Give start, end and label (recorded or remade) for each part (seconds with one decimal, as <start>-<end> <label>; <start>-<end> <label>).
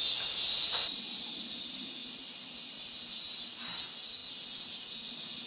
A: 0.0-5.5 recorded